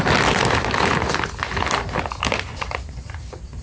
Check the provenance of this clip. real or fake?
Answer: real